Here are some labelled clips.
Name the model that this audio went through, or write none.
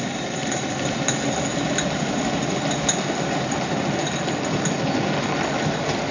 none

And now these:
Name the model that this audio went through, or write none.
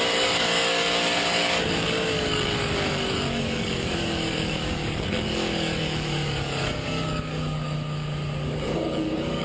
codec, DAC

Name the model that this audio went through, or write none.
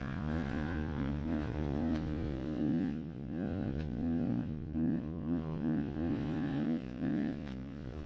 vocoder, Vocos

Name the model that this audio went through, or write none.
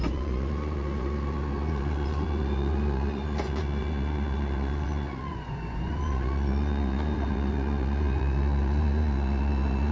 vocoder, Vocos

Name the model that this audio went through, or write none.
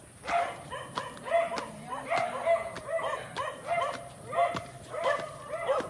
none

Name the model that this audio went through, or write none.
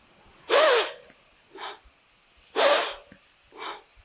none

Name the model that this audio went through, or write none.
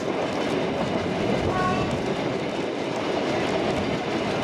none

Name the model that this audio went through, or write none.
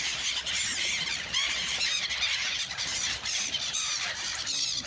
vocoder, BigVGAN v2